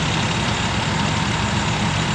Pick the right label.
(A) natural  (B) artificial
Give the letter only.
A